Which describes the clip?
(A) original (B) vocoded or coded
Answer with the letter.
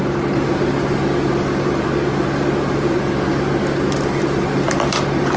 A